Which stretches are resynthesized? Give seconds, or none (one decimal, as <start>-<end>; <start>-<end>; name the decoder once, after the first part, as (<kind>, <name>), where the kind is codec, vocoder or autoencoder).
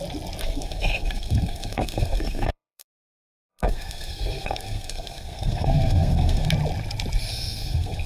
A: 0.4-3.1 (codec, SNAC); 3.5-6.5; 7.3-8.1